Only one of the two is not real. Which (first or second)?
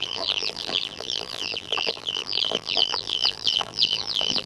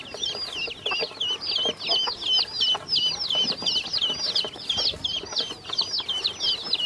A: first